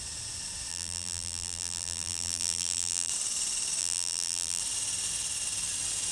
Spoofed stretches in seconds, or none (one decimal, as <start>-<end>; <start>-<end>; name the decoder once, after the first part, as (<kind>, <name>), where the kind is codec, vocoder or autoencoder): 0.7-3.1 (vocoder, BigVGAN v2); 3.8-4.6